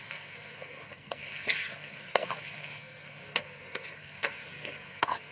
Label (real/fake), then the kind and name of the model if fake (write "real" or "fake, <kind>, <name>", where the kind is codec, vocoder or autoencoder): fake, codec, SNAC